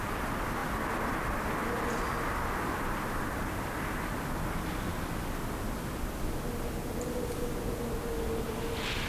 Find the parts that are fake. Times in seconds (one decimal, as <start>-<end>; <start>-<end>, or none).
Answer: none